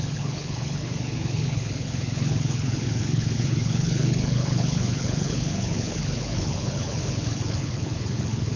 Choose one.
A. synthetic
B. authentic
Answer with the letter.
A